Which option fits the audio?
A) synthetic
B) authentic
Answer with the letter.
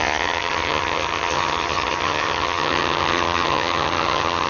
A